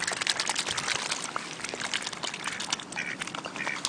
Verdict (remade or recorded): recorded